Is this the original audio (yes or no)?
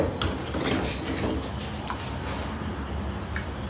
yes